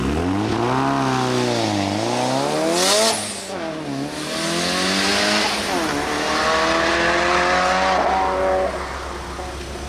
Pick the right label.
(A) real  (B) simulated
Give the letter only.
A